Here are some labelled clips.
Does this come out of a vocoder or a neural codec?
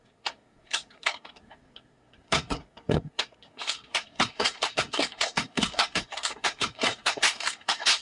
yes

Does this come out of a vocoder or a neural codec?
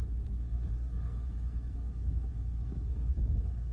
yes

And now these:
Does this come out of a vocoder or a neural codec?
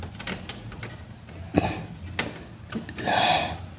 no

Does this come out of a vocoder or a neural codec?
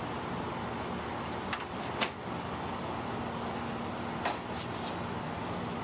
no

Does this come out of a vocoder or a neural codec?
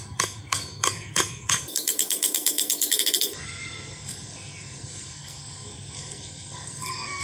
yes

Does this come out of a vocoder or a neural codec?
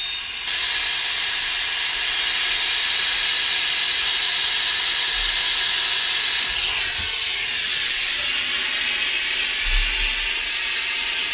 no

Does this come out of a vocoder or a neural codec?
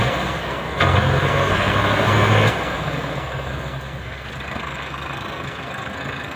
yes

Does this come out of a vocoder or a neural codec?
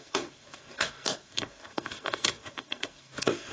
yes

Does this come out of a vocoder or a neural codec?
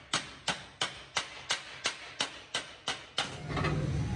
no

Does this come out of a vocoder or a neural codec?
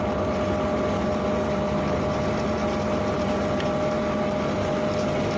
no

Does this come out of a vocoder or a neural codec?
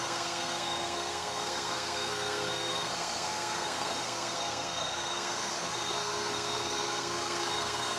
yes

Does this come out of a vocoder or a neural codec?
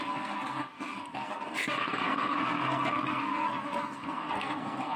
yes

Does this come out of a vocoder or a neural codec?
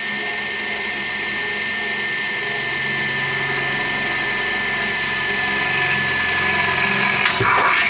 no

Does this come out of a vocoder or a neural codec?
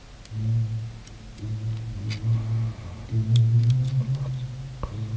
no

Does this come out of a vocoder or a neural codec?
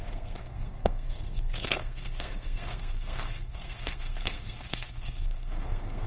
yes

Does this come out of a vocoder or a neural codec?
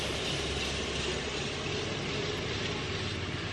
no